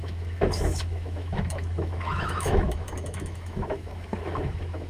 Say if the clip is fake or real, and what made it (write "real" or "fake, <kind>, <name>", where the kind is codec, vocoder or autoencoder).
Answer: fake, autoencoder, DAC-VAE